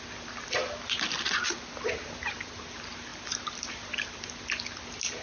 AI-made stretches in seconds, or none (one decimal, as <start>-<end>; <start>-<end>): none